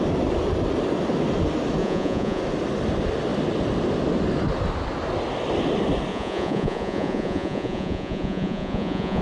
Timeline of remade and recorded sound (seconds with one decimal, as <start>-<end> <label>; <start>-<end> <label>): 0.0-1.8 recorded; 1.8-2.4 remade; 2.4-6.1 recorded; 6.1-9.2 remade